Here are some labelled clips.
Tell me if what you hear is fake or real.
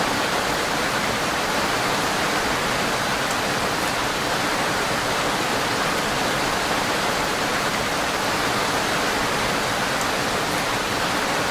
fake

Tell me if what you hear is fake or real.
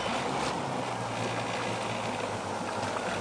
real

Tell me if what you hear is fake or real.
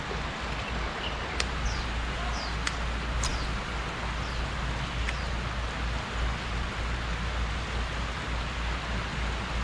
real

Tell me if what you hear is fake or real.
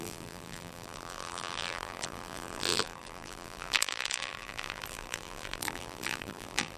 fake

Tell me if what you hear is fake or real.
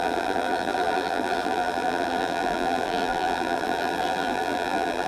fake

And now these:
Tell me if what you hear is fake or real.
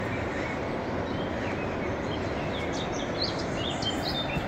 real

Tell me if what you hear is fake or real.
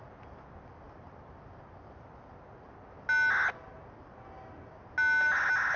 real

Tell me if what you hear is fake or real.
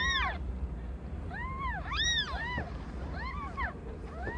fake